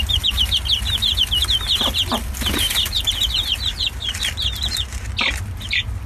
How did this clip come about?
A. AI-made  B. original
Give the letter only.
B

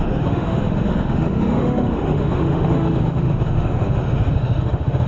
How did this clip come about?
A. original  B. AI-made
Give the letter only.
B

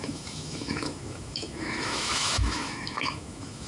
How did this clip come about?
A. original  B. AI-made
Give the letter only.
B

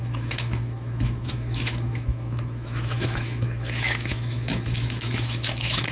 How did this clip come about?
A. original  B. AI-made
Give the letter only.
B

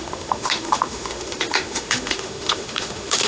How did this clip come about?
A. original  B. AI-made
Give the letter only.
B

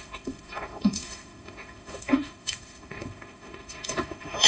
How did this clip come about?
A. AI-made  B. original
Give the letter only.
A